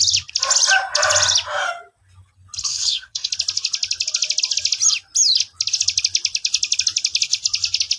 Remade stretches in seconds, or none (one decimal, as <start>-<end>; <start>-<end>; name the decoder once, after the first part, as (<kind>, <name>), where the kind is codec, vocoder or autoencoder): 2.6-3.3 (codec, SNAC)